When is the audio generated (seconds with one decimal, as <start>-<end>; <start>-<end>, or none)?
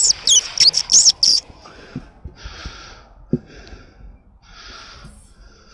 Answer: 1.3-2.0